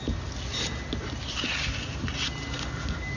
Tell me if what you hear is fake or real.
real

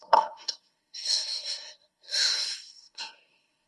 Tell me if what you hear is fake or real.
fake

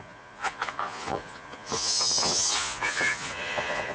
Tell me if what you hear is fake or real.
fake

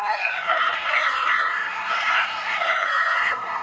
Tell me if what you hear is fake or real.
fake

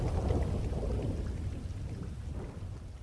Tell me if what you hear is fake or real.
real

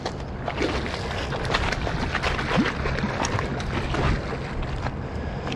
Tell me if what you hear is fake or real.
real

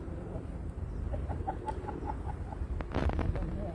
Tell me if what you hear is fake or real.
real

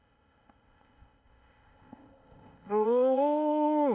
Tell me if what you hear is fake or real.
fake